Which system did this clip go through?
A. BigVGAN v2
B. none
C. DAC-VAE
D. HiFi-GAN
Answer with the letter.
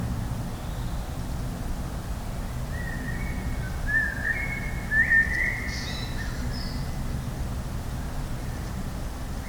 B